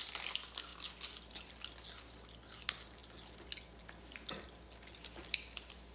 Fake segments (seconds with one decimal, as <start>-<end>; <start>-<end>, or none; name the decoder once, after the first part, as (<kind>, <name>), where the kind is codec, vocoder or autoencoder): none